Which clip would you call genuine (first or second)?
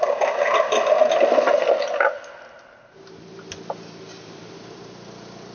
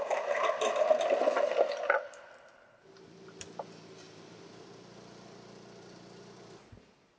first